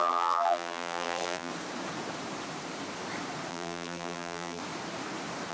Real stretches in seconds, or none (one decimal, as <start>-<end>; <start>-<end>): 1.5-3.5; 4.6-5.5